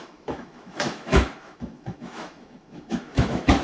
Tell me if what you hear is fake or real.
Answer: fake